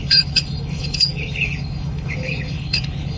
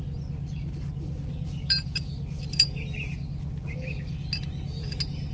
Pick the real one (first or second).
second